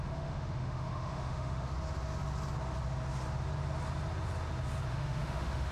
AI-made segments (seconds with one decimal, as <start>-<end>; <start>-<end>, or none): 0.0-1.7; 4.9-5.7